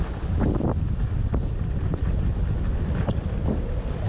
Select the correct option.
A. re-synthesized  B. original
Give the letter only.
B